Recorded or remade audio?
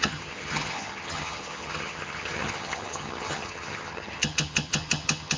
remade